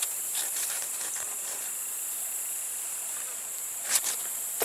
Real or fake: fake